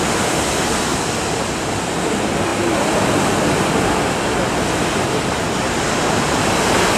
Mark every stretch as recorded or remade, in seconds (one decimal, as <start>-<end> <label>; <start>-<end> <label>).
0.0-7.0 recorded